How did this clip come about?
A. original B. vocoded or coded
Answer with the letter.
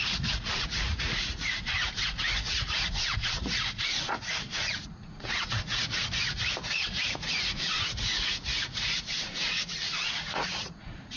B